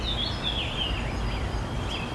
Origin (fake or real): real